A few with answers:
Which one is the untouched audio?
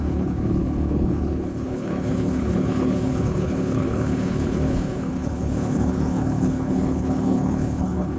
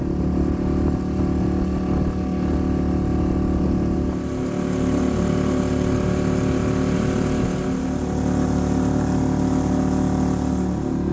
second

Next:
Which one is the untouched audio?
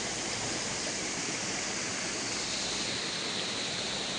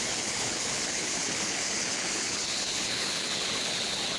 first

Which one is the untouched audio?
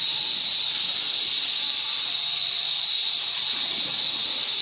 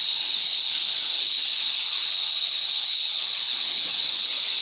first